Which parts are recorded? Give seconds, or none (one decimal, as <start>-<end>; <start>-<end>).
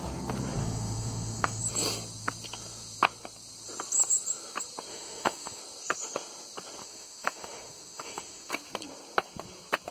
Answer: 0.0-0.6; 1.6-4.9; 5.6-6.8; 8.5-9.9